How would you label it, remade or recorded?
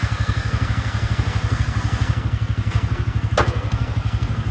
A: remade